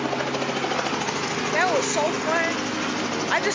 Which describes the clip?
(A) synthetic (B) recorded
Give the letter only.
B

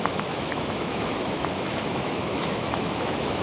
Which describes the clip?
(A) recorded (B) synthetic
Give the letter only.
B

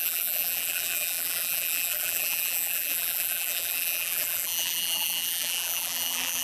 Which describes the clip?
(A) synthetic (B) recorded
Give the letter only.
A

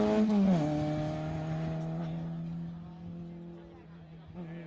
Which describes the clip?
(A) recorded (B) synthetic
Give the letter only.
A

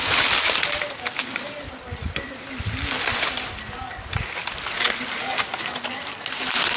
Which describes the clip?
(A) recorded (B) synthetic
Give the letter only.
A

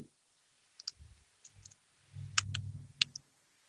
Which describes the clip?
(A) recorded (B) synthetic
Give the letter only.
A